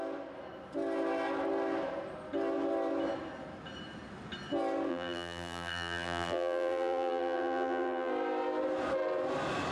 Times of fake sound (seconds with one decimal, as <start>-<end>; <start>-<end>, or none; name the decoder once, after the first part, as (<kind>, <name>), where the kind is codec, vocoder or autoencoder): 4.9-8.1 (vocoder, BigVGAN v2)